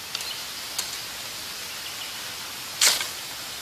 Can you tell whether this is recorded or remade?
recorded